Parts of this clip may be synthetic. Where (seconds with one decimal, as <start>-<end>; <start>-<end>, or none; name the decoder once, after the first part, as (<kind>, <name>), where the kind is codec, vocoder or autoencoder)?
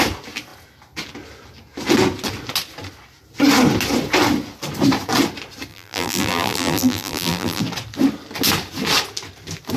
5.7-7.6 (vocoder, BigVGAN v2)